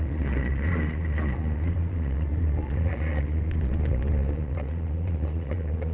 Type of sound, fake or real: fake